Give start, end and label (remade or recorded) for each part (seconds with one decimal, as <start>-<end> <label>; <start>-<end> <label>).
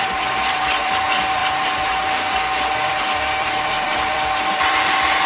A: 0.0-5.3 remade